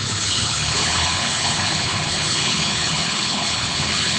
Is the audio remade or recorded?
remade